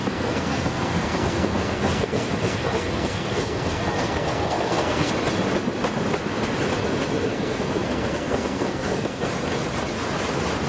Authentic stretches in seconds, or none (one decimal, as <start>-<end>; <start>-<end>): 5.1-7.3; 9.3-10.7